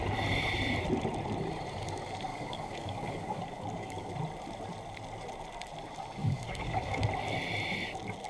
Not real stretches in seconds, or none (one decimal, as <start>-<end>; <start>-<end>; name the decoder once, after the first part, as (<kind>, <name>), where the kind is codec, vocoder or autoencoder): 2.3-4.1 (codec, DAC); 6.2-7.0